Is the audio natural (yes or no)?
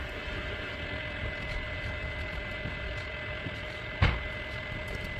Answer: yes